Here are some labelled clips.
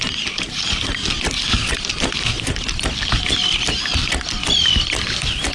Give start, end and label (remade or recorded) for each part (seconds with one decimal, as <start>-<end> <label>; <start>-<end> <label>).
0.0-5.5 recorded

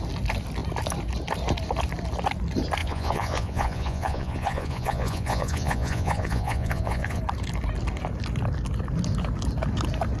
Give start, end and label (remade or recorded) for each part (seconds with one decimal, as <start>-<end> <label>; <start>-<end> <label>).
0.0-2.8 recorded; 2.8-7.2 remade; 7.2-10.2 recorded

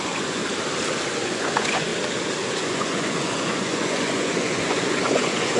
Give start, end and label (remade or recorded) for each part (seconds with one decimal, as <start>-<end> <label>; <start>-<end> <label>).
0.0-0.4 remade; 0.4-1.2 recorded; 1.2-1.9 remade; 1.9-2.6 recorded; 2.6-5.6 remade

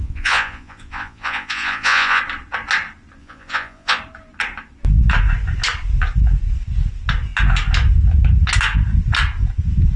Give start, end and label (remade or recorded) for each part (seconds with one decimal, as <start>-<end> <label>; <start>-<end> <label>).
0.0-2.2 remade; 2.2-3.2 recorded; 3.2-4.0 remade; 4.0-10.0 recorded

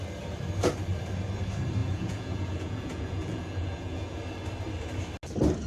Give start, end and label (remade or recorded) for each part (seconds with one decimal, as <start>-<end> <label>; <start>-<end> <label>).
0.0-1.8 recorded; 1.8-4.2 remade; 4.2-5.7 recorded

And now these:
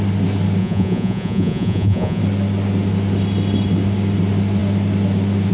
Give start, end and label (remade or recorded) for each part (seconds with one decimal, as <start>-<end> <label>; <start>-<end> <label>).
0.0-0.6 recorded; 0.6-2.2 remade; 2.2-5.5 recorded